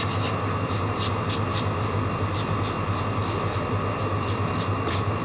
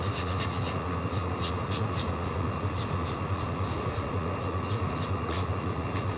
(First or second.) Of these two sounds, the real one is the first